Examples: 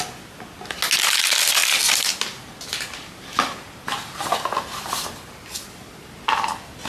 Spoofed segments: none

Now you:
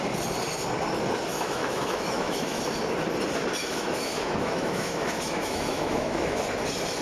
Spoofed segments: 1.3-2.6 (autoencoder, DAC-VAE); 3.6-6.4

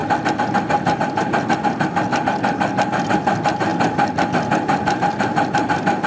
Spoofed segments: none

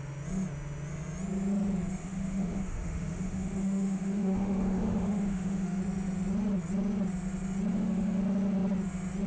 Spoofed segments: 2.0-5.8 (autoencoder, DAC-VAE); 7.7-8.2

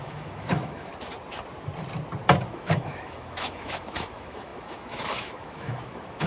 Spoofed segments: 0.0-0.9 (autoencoder, DAC-VAE); 2.5-6.3